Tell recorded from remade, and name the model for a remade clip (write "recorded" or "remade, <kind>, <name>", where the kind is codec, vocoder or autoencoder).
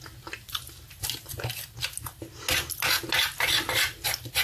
recorded